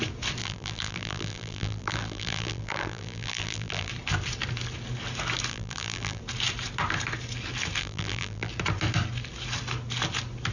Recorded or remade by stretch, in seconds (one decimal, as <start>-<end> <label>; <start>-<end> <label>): 0.0-0.4 recorded; 0.4-3.9 remade; 3.9-5.5 recorded; 5.5-6.2 remade; 6.2-7.8 recorded; 7.8-8.5 remade; 8.5-10.5 recorded